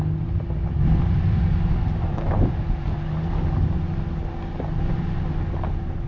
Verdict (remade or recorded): recorded